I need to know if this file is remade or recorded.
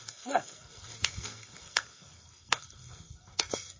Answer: remade